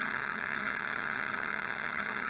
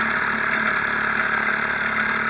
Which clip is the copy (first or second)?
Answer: first